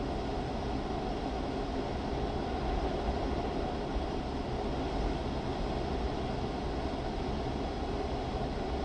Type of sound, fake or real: real